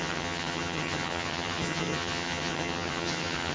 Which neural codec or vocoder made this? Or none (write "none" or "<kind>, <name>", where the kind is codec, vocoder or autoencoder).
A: vocoder, HiFi-GAN